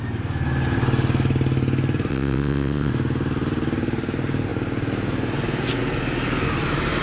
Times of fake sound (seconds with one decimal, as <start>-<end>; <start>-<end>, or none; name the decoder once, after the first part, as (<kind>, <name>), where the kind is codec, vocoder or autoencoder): 2.1-2.9 (vocoder, WaveNeXt)